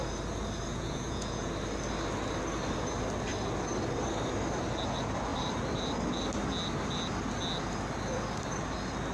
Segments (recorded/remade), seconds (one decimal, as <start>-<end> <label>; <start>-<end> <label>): 0.0-0.7 recorded; 0.7-1.5 remade; 1.5-9.1 recorded